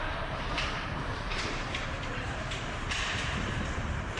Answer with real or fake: fake